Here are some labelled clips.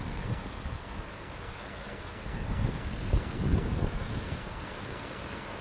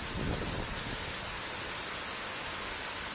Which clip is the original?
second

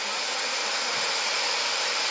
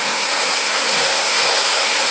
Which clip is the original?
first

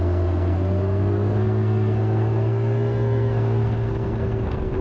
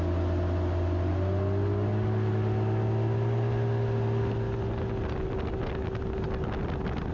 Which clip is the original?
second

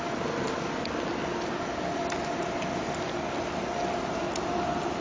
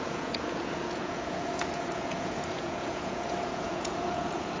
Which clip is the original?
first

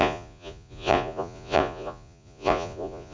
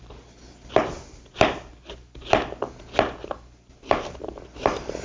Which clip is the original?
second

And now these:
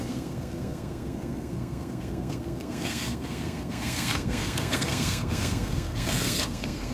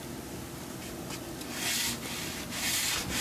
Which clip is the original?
second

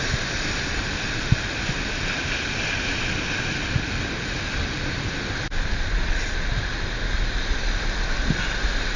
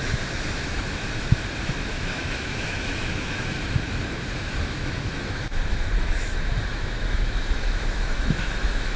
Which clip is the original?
first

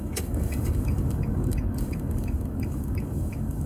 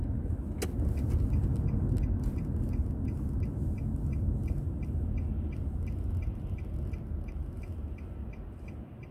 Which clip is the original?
second